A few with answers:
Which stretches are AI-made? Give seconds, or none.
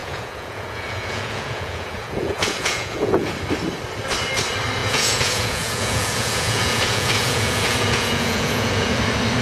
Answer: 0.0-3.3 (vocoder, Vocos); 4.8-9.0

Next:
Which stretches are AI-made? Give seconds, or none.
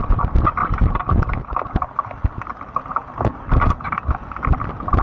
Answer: 0.6-1.2 (vocoder, BigVGAN v2)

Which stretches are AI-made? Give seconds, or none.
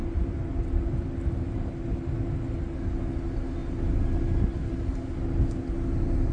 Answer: none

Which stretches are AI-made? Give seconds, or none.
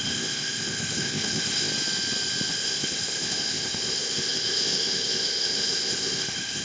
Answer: 0.0-1.7 (codec, ZipCodec); 2.5-6.6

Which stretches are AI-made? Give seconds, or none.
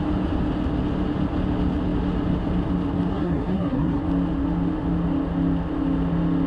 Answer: 3.1-4.0 (codec, SNAC)